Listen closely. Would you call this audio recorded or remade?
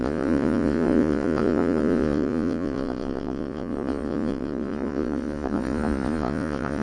remade